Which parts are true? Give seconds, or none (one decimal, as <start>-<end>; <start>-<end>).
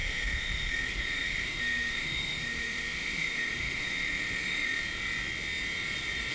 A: 4.8-6.3